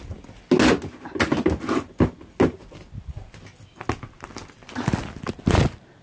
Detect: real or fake real